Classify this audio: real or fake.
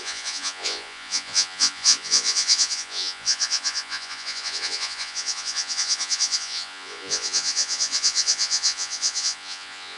fake